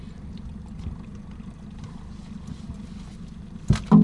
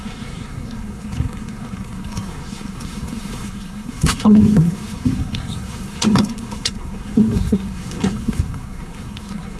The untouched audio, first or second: first